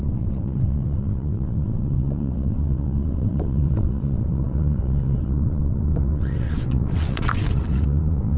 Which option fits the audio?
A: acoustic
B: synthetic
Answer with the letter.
B